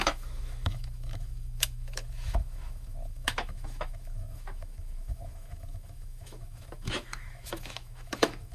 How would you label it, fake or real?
fake